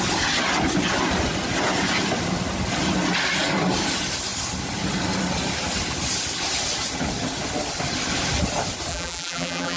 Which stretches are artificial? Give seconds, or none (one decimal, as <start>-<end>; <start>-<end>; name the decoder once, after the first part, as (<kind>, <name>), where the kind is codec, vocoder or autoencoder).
8.9-9.8 (vocoder, BigVGAN v2)